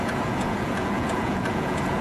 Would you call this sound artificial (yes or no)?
yes